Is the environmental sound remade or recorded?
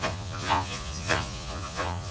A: remade